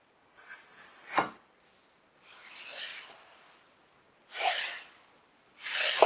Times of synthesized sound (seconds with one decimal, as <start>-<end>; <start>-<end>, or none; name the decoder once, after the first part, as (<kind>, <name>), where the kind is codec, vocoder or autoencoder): none